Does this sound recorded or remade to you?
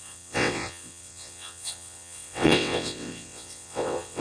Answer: remade